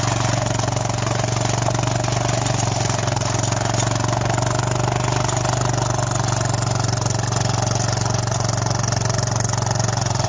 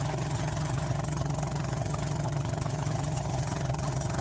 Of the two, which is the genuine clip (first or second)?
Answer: first